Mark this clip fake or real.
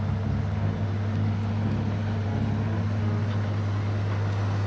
real